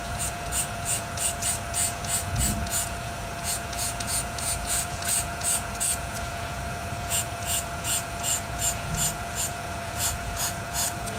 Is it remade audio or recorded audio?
remade